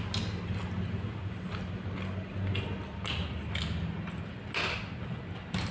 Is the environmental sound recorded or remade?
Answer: recorded